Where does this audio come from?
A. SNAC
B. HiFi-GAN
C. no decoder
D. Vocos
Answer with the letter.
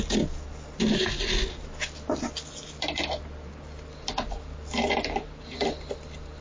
C